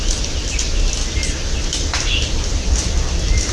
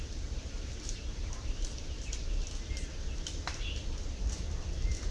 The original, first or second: first